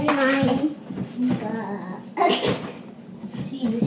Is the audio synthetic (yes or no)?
no